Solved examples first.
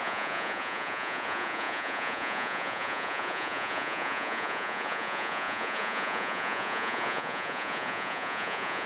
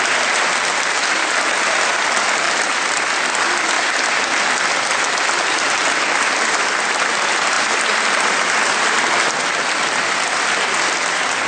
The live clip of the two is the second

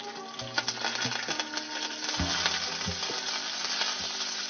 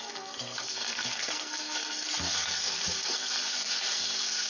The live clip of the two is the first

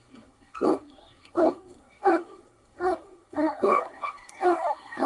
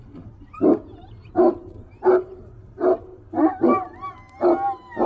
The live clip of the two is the second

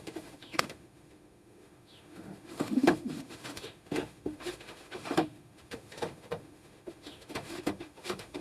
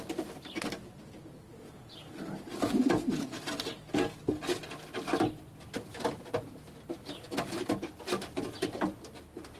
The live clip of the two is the second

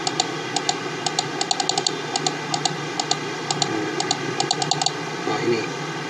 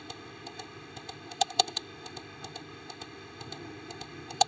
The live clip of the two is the first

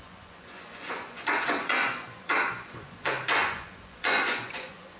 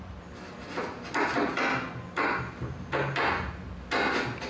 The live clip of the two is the second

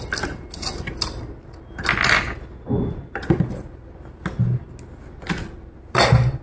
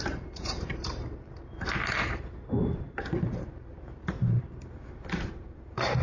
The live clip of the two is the first